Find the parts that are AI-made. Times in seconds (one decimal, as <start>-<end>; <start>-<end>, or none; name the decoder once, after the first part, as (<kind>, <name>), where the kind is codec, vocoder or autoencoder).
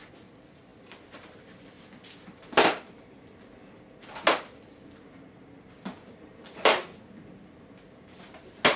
none